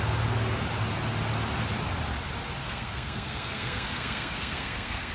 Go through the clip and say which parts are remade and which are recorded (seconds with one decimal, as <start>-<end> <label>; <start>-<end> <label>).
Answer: 0.0-2.6 recorded; 2.6-5.1 remade